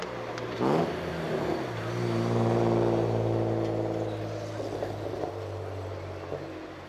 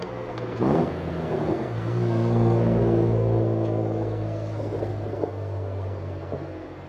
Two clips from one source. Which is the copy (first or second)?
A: second